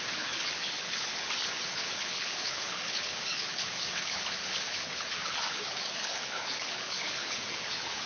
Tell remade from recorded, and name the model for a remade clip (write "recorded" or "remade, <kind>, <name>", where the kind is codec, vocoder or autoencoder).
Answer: remade, codec, HILCodec